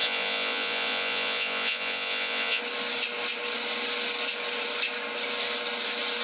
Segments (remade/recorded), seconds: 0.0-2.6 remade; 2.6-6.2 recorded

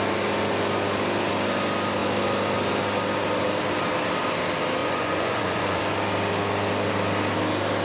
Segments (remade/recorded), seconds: 0.0-4.8 recorded; 4.8-5.8 remade; 5.8-7.8 recorded

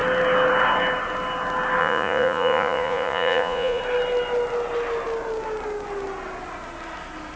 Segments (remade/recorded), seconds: 0.0-1.8 recorded; 1.8-3.8 remade; 3.8-7.4 recorded

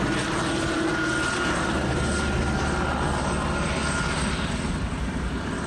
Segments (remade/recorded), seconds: 0.0-5.7 recorded

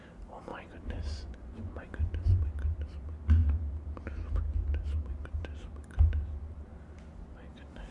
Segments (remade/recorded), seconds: 0.0-0.5 recorded; 0.5-2.4 remade; 2.4-7.9 recorded

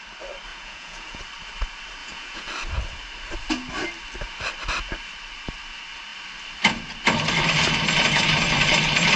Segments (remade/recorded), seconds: 0.0-0.5 recorded; 0.5-1.2 remade; 1.2-2.0 recorded; 2.0-2.5 remade; 2.5-9.2 recorded

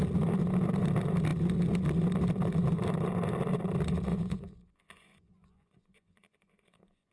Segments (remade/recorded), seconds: 0.0-4.1 recorded; 4.1-7.1 remade

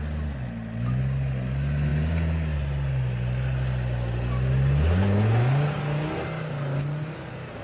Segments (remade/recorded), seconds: 0.0-7.6 recorded